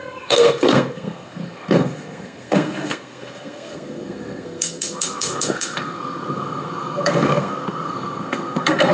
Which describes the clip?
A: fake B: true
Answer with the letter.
A